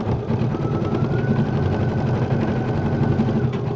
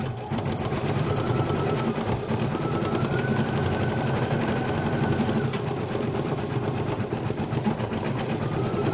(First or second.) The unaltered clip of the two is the first